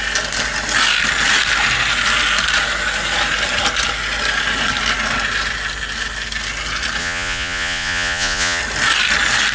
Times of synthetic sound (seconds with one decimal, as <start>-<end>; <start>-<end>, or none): 7.0-8.6